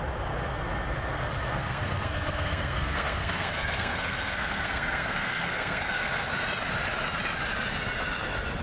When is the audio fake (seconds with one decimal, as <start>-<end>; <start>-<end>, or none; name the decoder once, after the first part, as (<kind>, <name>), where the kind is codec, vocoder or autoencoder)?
1.5-6.3 (codec, SNAC)